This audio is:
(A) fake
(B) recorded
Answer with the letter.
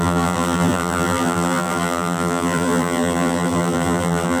A